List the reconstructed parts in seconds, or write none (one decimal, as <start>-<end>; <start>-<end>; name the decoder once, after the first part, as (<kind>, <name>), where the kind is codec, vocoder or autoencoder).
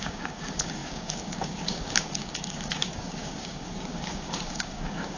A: 0.0-5.2 (codec, DAC)